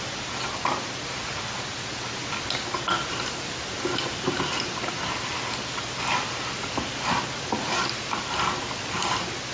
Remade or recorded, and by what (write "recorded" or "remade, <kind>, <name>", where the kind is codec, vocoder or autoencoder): recorded